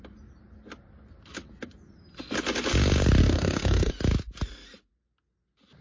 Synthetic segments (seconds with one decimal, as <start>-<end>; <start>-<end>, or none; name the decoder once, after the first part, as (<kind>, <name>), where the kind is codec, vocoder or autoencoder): 3.2-3.9 (codec, SNAC)

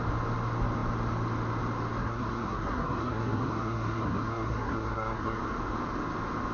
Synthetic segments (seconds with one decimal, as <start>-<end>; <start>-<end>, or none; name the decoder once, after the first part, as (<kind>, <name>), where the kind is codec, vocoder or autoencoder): 2.0-5.4 (codec, SNAC)

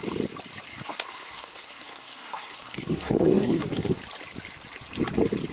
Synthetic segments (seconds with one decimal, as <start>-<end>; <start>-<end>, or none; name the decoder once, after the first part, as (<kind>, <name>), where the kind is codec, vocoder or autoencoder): 0.7-4.0 (codec, SNAC)

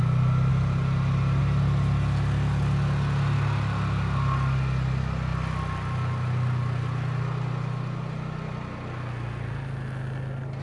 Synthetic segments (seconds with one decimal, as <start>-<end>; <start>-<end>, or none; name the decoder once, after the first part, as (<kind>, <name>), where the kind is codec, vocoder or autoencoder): none

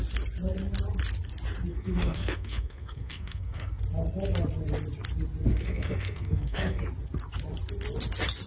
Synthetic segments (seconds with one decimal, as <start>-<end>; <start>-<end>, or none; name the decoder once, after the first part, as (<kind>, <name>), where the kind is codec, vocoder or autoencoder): 1.7-3.8 (codec, SNAC); 5.5-6.8

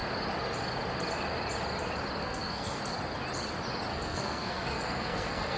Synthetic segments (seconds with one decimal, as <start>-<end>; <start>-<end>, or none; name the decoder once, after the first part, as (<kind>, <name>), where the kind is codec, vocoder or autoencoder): 2.2-2.8 (codec, SNAC); 3.9-5.6

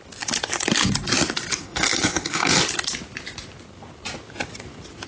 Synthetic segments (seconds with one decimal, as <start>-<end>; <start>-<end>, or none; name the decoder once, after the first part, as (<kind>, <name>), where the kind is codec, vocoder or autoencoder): 1.6-2.5 (codec, SNAC)